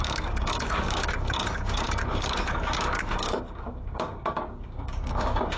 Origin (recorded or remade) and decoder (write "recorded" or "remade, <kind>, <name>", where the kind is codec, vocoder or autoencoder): remade, codec, DAC